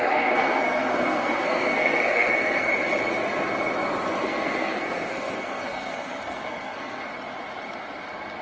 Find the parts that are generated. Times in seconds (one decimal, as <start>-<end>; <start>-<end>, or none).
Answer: 0.0-2.7; 4.2-7.1